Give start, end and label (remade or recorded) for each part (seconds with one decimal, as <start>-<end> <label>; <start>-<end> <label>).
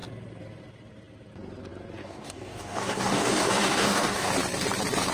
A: 0.0-2.0 recorded; 2.0-4.3 remade; 4.3-5.1 recorded